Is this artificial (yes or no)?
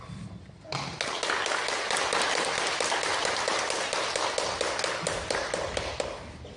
no